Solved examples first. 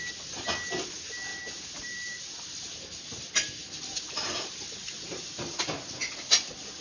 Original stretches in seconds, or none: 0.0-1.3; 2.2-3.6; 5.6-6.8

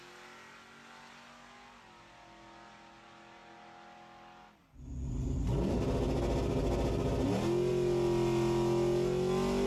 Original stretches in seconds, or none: 0.0-9.7